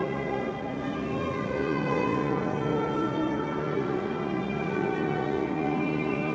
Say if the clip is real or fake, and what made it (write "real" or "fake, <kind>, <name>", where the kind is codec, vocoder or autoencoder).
fake, vocoder, Vocos